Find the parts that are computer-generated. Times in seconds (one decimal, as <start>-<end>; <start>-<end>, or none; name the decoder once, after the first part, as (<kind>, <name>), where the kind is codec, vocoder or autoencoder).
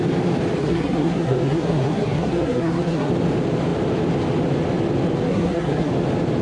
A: 0.6-3.1 (codec, SNAC); 5.3-5.9